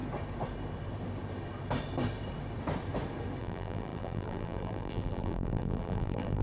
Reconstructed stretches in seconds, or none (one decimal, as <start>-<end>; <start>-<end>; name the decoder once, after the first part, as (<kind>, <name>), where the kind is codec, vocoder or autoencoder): 3.4-6.4 (vocoder, BigVGAN v2)